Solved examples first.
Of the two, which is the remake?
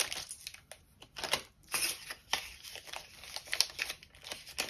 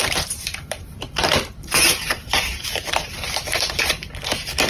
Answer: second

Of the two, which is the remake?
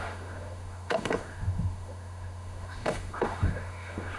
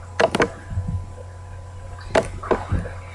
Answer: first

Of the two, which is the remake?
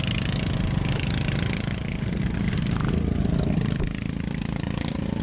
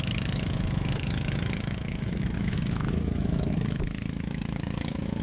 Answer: second